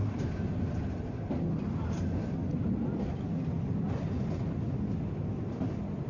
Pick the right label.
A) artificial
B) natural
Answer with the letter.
B